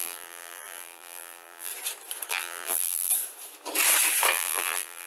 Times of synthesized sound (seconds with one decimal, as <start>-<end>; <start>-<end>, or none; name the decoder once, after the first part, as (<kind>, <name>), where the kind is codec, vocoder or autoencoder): 0.0-1.7 (vocoder, BigVGAN v2); 2.3-3.1; 4.3-5.1